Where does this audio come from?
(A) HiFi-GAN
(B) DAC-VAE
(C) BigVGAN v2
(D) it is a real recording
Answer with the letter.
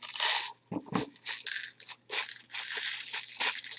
D